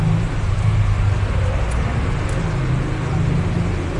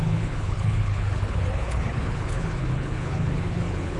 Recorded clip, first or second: first